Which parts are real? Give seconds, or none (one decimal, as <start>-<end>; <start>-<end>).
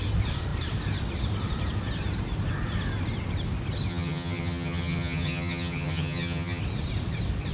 0.0-3.9; 6.6-7.5